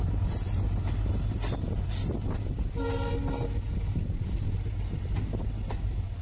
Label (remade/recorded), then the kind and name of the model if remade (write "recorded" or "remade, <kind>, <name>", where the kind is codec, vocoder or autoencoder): recorded